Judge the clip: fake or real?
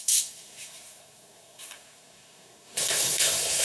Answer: fake